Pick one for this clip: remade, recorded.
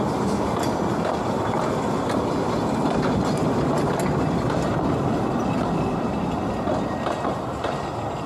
recorded